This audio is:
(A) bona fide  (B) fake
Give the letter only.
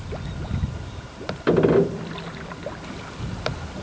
A